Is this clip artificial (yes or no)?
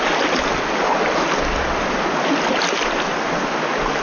no